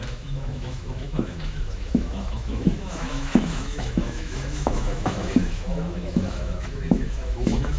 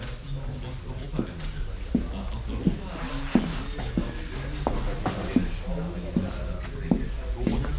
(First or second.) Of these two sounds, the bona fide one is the second